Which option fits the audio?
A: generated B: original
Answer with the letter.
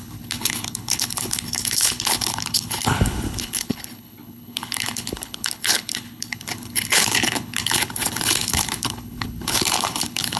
A